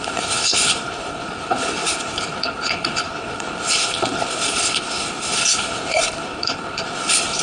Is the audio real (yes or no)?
no